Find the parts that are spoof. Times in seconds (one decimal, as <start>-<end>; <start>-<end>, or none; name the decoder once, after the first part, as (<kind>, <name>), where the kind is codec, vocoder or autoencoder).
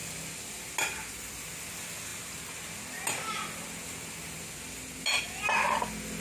none